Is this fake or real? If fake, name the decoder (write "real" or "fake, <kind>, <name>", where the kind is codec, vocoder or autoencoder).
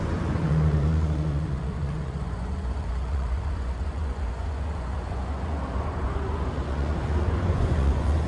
fake, vocoder, Vocos